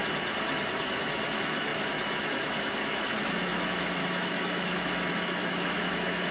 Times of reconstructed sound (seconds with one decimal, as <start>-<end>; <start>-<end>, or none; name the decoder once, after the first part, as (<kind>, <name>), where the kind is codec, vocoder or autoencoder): 0.7-6.3 (autoencoder, DAC-VAE)